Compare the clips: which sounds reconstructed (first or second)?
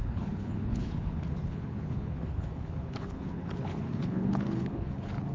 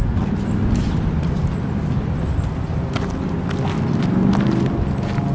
first